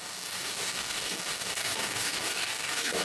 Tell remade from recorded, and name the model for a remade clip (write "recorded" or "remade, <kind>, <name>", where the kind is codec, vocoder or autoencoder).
remade, codec, DAC